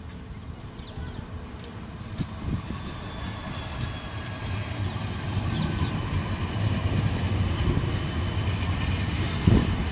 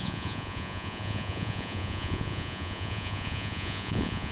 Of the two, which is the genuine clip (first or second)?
first